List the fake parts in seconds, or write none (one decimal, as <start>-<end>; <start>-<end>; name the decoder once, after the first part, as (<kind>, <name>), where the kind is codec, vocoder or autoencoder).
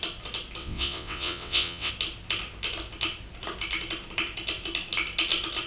0.6-1.9 (vocoder, WaveNeXt)